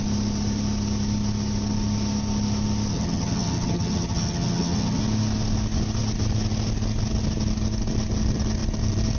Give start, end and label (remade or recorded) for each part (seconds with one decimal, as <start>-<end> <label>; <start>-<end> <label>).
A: 0.0-2.9 recorded; 2.9-5.0 remade; 5.0-9.2 recorded